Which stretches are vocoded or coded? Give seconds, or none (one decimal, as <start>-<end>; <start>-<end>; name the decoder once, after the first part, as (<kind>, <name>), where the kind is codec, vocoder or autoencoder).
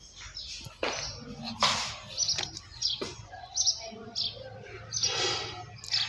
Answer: 2.7-3.9 (vocoder, Vocos)